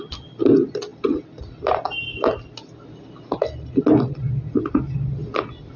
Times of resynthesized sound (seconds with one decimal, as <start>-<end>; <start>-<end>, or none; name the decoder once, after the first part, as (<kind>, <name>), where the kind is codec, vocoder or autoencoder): none